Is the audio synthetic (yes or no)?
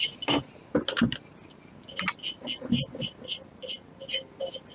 no